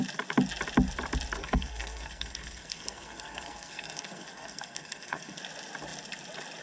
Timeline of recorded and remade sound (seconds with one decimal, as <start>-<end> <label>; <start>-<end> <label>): 0.0-1.4 recorded; 1.4-5.4 remade; 5.4-6.6 recorded